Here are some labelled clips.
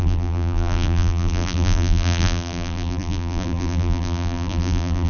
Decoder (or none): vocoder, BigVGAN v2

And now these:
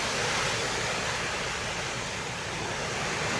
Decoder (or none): none